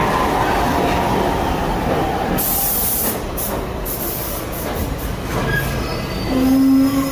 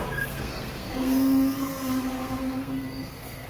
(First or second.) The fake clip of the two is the second